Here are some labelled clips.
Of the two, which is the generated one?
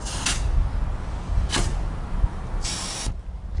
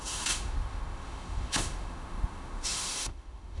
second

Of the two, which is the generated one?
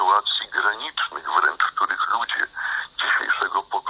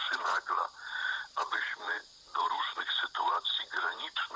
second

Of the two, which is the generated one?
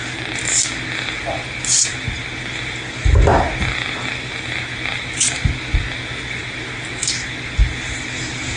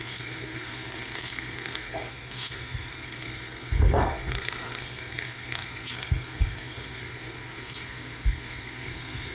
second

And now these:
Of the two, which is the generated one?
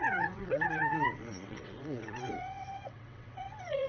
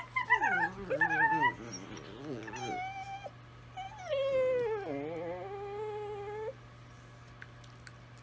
first